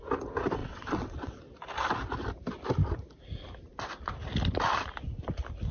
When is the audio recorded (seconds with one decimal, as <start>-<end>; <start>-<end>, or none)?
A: 0.0-0.6; 1.4-5.7

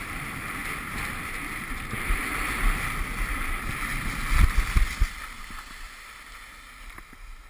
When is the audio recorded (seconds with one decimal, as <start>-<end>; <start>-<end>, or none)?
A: 0.6-1.2; 2.2-3.3; 3.9-7.0

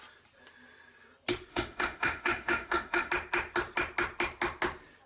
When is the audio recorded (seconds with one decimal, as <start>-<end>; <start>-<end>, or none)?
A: 0.0-1.5; 3.1-5.1